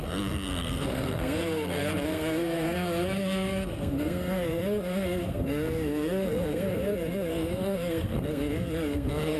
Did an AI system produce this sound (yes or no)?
yes